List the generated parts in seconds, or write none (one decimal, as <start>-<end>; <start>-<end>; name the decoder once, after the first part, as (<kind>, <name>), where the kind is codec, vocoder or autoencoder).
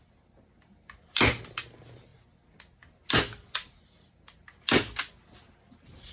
none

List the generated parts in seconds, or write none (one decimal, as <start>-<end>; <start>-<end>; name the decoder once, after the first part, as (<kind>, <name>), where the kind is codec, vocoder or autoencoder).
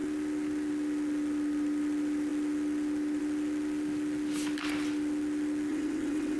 5.7-6.4 (vocoder, WaveNeXt)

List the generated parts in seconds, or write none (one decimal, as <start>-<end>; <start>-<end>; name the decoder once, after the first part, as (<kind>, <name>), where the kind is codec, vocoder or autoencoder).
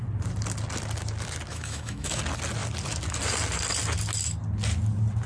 1.5-2.2 (autoencoder, DAC-VAE)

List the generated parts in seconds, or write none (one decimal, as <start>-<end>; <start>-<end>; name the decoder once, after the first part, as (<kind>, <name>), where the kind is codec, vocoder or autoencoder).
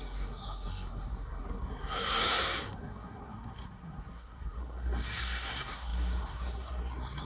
0.0-7.2 (codec, SNAC)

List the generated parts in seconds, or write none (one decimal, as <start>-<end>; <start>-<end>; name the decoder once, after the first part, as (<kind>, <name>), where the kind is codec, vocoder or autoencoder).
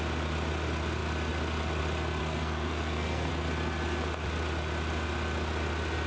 2.2-3.3 (codec, SNAC)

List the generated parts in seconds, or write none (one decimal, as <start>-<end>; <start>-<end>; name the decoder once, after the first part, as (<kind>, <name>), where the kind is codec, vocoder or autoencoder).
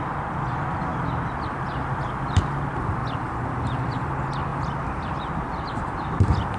3.0-4.1 (vocoder, BigVGAN v2); 4.5-5.3